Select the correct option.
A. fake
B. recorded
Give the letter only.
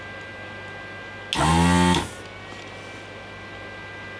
B